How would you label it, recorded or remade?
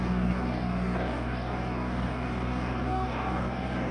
remade